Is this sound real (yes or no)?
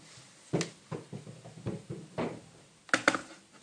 yes